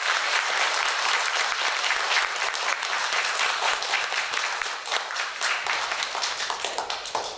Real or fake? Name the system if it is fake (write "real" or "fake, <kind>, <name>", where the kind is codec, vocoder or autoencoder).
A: fake, vocoder, BigVGAN v2